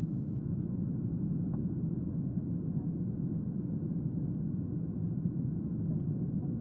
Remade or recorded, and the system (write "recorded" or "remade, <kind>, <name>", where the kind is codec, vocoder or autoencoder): recorded